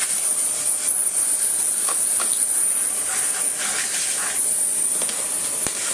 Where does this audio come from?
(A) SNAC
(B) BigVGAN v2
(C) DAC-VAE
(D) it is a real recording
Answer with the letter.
D